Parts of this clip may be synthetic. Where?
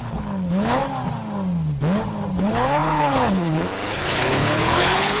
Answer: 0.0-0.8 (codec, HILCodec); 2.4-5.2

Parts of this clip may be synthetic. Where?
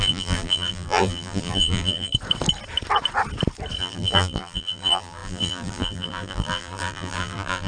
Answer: 0.0-2.1 (vocoder, BigVGAN v2); 3.8-7.7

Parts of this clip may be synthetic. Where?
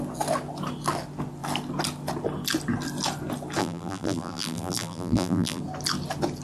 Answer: 3.6-5.6 (vocoder, BigVGAN v2)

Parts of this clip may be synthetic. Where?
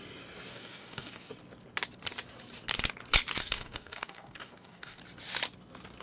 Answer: 0.5-1.3 (codec, DAC); 3.4-5.0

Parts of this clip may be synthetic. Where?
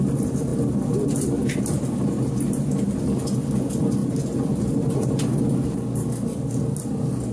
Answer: none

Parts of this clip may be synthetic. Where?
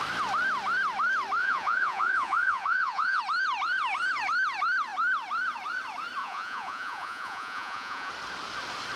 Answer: 1.4-3.2 (vocoder, Vocos); 6.2-8.1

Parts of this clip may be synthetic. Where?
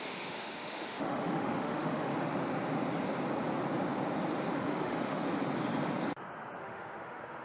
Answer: 0.0-2.1 (autoencoder, DAC-VAE); 4.6-5.2; 6.6-7.4